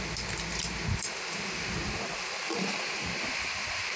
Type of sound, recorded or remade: recorded